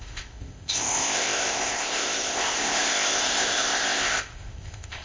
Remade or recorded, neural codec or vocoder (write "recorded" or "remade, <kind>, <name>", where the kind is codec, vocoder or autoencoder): remade, codec, ZipCodec